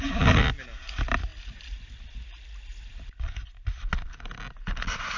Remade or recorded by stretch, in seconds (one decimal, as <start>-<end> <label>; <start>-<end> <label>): 0.0-5.2 recorded